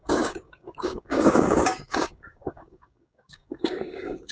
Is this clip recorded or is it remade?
remade